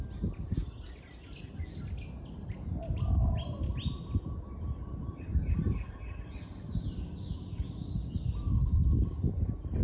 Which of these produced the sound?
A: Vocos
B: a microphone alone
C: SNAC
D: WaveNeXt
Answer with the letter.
B